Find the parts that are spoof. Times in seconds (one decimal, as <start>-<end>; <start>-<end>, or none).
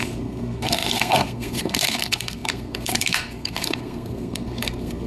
0.0-5.1